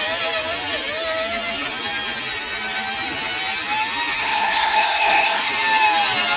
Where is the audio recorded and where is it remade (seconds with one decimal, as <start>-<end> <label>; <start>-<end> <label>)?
0.0-4.2 recorded; 4.2-5.5 remade; 5.5-6.4 recorded